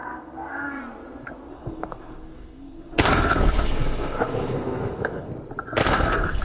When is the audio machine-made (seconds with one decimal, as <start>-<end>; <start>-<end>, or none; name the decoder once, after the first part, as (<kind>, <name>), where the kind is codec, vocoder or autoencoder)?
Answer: 0.0-0.8 (codec, SNAC); 1.5-5.3; 5.8-6.4